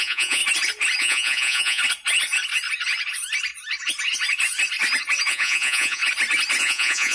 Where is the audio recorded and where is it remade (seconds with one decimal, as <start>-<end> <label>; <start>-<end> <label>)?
0.0-0.4 remade; 0.4-1.0 recorded; 1.0-1.8 remade; 1.8-5.3 recorded; 5.3-6.0 remade; 6.0-6.6 recorded; 6.6-7.1 remade